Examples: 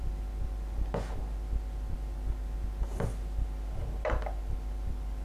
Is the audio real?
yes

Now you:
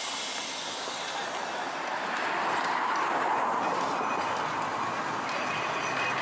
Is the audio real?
yes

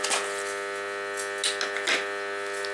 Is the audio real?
yes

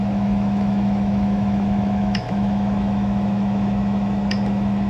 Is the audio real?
no